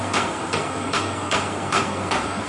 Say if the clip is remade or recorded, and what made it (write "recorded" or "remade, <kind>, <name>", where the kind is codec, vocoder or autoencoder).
remade, codec, SNAC